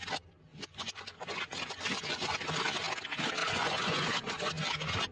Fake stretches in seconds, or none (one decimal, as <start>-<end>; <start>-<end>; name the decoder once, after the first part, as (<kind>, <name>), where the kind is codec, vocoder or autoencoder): 0.5-2.4 (vocoder, Vocos); 3.4-4.5